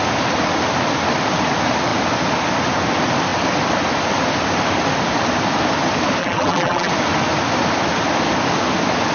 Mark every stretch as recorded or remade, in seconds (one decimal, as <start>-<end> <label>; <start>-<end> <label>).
0.0-6.2 recorded; 6.2-6.9 remade; 6.9-9.1 recorded